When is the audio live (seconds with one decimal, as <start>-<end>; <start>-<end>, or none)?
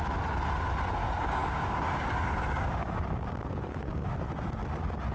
0.0-1.0; 4.1-5.1